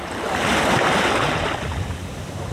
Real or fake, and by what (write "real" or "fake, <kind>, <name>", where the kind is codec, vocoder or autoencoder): real